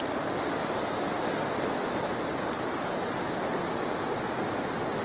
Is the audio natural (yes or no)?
yes